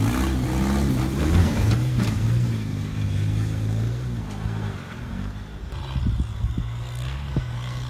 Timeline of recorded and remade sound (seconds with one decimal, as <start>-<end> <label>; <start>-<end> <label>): 0.0-1.2 recorded; 1.2-5.7 remade; 5.7-6.3 recorded; 6.3-7.9 remade